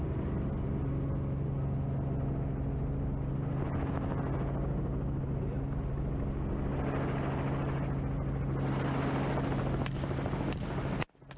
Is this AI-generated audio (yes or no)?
no